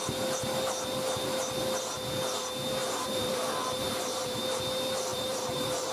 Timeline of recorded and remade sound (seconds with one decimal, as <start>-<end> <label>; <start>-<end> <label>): 0.0-2.8 recorded; 2.8-3.4 remade; 3.4-3.8 recorded; 3.8-4.4 remade; 4.4-5.1 recorded; 5.1-5.9 remade